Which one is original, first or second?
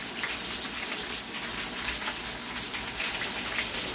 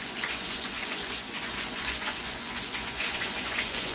first